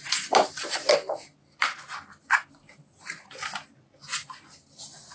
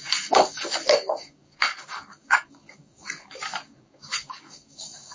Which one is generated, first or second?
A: second